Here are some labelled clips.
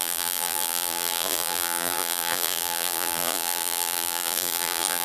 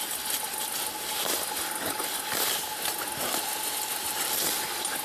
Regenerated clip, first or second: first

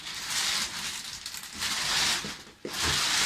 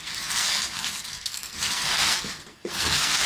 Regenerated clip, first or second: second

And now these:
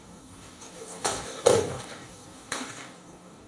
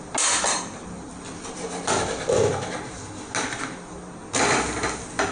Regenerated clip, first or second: first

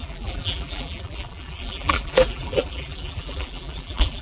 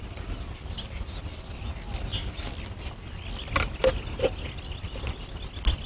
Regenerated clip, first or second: first